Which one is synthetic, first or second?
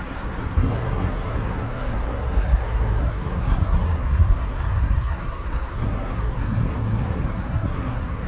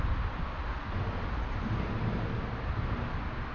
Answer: first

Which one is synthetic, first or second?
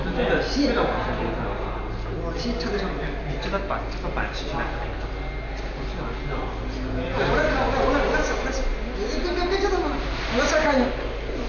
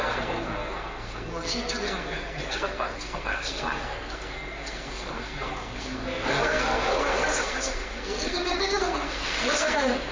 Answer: second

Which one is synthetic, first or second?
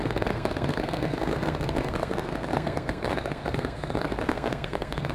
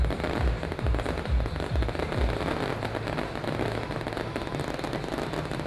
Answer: first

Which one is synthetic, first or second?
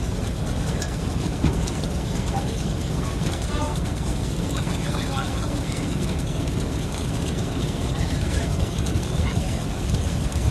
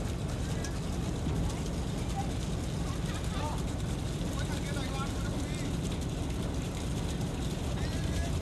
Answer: first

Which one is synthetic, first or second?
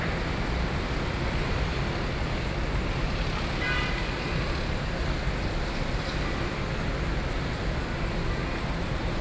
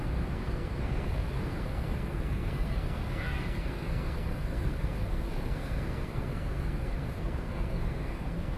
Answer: second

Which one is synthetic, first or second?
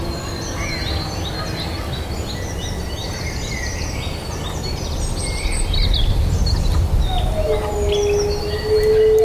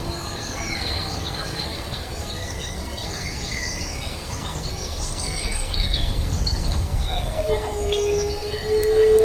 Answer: second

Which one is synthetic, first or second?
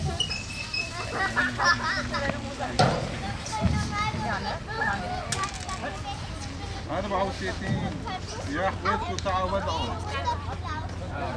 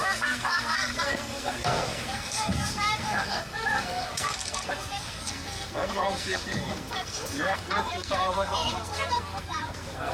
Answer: second